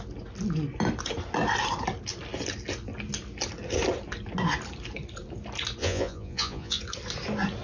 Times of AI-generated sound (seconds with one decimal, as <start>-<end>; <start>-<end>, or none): 5.8-6.8